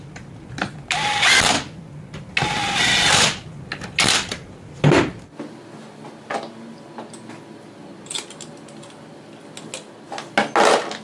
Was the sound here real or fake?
real